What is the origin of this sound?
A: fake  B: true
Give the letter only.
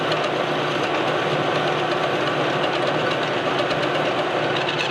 B